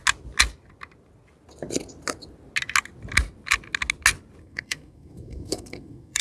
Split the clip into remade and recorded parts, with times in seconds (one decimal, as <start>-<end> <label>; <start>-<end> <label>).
0.0-4.4 recorded; 4.4-6.2 remade